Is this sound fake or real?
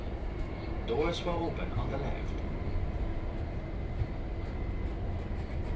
real